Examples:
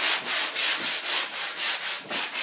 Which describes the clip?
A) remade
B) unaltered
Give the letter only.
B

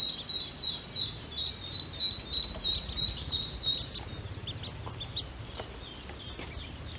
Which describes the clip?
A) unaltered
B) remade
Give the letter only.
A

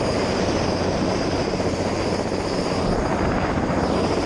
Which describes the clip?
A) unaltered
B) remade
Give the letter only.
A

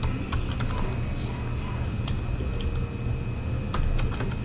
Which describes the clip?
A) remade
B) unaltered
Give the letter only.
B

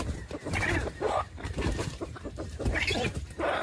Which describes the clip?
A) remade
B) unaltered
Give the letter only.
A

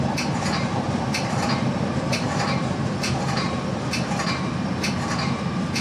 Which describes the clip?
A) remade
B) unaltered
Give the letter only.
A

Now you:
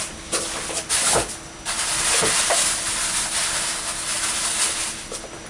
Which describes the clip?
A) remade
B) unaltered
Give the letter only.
B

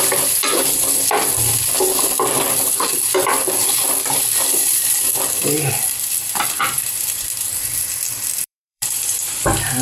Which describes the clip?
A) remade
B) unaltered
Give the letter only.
A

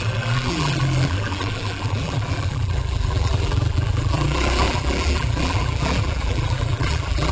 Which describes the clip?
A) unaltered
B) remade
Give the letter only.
B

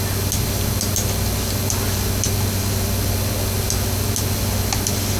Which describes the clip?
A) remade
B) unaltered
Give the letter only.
B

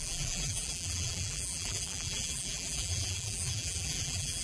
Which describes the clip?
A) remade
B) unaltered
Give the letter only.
A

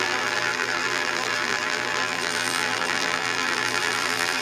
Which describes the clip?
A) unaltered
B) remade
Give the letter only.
B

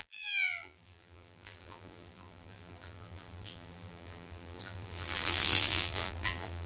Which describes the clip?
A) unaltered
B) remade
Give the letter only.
B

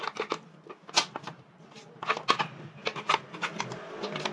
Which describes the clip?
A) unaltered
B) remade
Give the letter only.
A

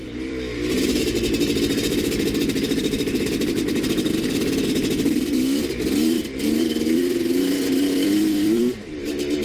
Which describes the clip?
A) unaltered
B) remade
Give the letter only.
B